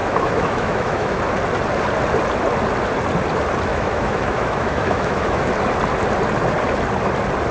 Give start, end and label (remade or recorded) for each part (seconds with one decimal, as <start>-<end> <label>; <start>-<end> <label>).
0.0-1.2 remade; 1.2-3.7 recorded; 3.7-5.5 remade; 5.5-7.5 recorded